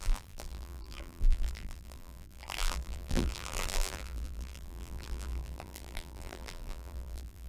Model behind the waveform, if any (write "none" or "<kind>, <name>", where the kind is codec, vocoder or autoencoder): vocoder, BigVGAN v2